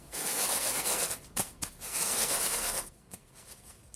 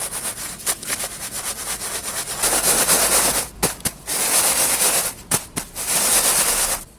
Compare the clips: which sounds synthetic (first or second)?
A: first